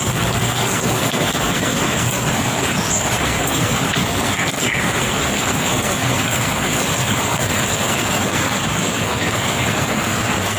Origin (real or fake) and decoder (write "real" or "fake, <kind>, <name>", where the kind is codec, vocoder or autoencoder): fake, codec, SNAC